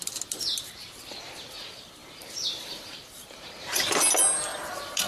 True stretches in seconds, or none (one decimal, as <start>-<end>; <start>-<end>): 0.0-0.5; 1.3-2.0; 3.9-4.5